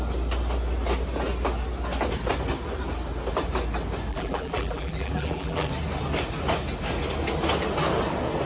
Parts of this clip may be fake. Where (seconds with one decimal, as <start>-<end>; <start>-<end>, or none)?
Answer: 4.1-5.7